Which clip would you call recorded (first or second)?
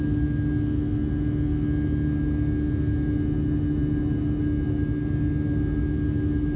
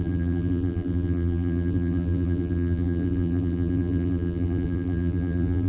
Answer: first